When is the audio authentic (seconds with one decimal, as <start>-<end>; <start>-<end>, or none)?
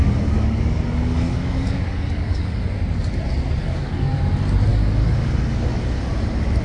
2.6-3.6; 4.2-4.7; 6.0-6.6